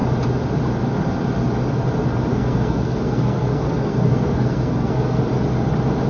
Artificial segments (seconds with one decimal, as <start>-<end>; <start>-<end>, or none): 2.3-5.2